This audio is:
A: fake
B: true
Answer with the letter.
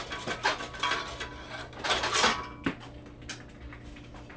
B